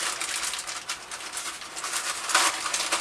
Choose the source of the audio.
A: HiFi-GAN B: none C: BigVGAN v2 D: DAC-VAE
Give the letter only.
B